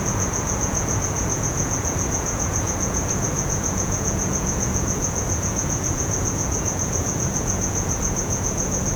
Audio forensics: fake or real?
fake